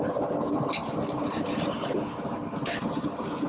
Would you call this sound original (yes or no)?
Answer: yes